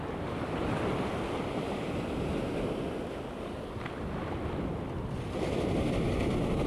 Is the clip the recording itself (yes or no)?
yes